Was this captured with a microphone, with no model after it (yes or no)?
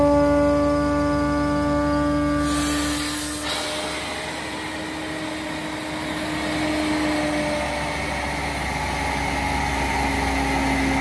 yes